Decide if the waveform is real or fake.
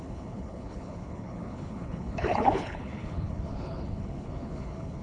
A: fake